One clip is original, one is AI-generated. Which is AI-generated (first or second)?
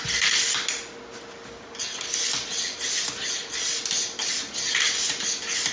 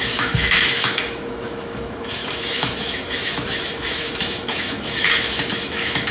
second